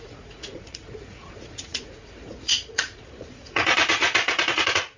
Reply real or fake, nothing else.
fake